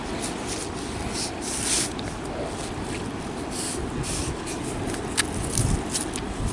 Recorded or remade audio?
recorded